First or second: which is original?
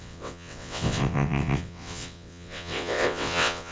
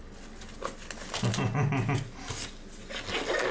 second